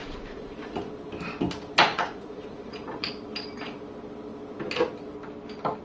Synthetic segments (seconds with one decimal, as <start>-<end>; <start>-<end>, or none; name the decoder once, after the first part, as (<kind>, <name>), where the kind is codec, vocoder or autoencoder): 0.0-0.9 (vocoder, Vocos); 1.9-3.1